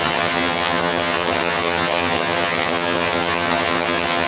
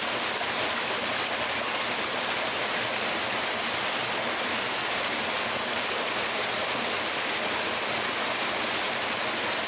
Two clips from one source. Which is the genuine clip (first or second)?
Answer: second